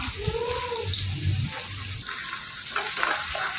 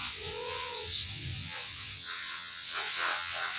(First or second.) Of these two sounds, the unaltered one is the first